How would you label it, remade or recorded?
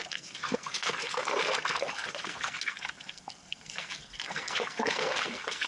remade